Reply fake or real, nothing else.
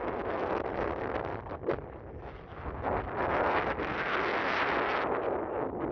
real